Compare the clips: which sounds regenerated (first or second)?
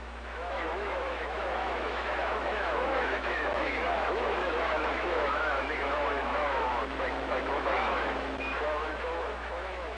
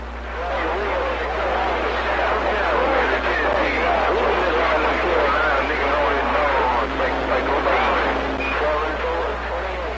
first